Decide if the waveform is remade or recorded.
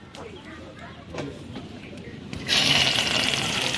remade